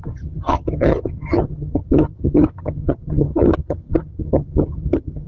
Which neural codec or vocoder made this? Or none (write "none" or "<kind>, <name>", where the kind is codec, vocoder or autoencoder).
vocoder, HiFi-GAN